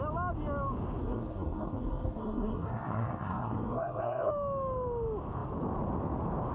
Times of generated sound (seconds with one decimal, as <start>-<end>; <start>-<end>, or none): 1.0-4.3